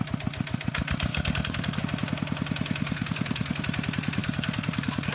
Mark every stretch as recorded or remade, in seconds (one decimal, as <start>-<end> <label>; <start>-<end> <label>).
0.0-1.1 recorded; 1.1-1.8 remade; 1.8-2.8 recorded; 2.8-3.6 remade; 3.6-4.2 recorded; 4.2-5.1 remade